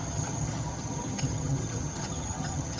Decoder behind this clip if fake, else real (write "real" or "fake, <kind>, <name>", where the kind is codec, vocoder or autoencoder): fake, vocoder, HiFi-GAN